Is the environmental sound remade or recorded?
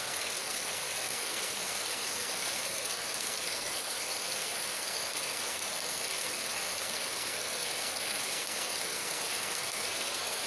remade